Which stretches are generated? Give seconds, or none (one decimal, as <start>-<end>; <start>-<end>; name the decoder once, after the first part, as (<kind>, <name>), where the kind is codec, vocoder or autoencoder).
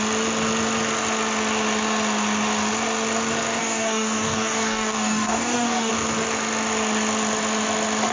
3.6-5.9 (codec, DAC)